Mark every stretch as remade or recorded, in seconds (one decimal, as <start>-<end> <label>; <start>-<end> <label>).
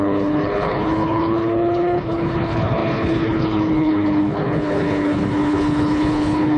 0.0-6.6 remade